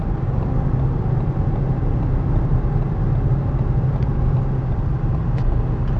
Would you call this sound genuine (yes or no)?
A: yes